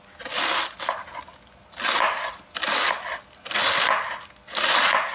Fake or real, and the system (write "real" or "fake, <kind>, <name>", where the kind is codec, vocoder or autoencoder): real